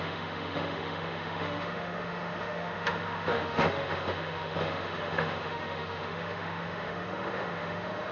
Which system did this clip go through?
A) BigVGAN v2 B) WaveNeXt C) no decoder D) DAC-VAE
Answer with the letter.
D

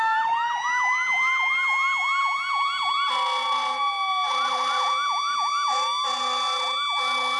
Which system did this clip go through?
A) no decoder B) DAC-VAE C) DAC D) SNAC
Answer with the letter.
A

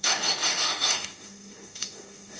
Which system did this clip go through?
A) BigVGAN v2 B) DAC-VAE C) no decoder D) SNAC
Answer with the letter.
B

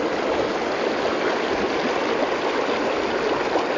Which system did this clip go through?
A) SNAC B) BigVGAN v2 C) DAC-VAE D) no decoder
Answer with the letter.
D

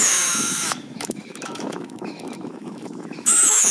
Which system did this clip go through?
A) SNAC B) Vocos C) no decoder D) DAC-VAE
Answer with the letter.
D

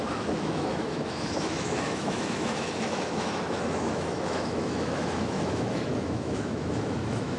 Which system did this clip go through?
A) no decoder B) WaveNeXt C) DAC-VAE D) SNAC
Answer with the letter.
C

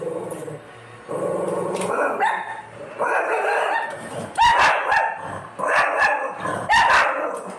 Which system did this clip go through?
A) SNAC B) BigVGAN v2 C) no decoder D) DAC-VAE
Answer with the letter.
C